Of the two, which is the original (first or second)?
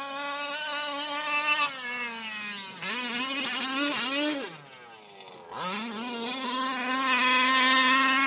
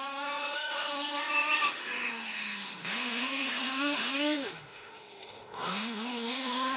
first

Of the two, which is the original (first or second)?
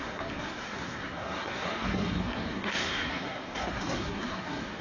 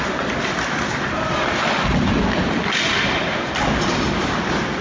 second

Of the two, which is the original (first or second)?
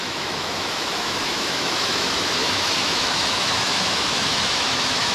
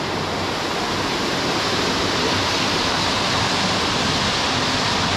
second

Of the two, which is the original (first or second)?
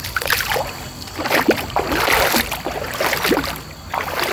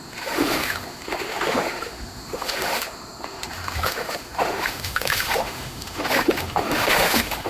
first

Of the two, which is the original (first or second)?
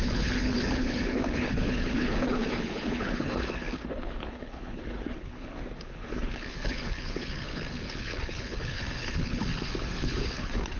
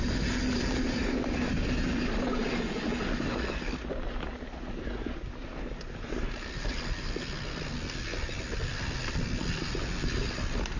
second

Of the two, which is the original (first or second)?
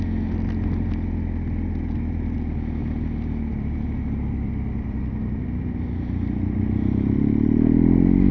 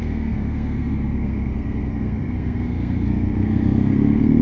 first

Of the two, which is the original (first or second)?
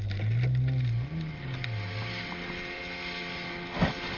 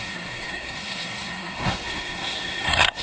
first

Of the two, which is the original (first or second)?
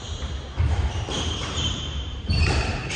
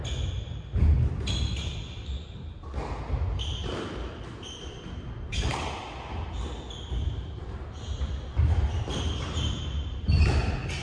second